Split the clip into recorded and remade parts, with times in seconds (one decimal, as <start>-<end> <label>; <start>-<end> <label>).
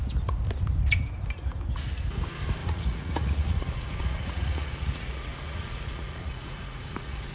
0.0-2.6 recorded; 2.6-7.3 remade